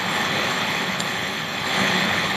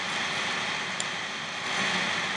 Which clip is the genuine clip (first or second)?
second